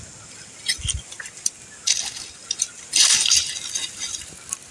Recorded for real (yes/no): yes